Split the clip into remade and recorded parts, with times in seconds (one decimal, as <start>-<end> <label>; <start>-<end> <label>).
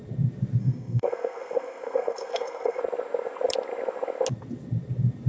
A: 0.0-0.6 recorded; 0.6-2.8 remade; 2.8-5.3 recorded